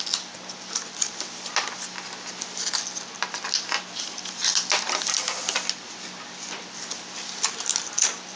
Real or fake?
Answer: real